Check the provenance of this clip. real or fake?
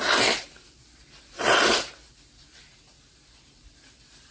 real